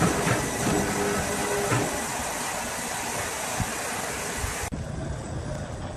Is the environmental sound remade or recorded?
recorded